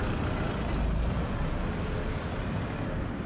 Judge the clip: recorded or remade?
recorded